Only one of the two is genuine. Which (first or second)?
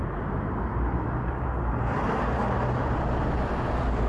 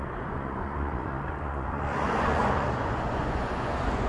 first